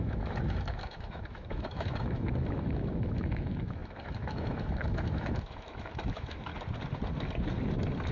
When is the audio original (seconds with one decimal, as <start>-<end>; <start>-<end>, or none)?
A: 6.5-8.1